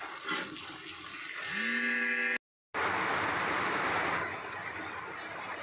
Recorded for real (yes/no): yes